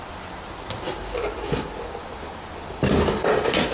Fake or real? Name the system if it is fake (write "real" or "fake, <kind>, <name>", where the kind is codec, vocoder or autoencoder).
real